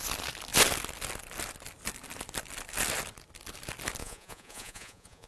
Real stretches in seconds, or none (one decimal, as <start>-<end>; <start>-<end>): 0.0-4.0